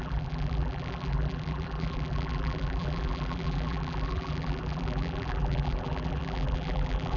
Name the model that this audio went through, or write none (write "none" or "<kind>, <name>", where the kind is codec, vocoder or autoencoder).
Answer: vocoder, BigVGAN v2